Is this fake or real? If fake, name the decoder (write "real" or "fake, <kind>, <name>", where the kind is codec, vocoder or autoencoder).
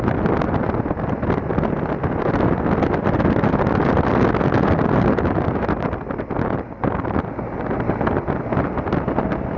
real